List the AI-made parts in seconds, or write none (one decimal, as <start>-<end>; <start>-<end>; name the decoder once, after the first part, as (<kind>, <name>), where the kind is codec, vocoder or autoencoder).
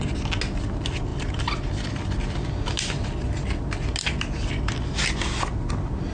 none